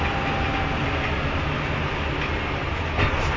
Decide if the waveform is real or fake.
real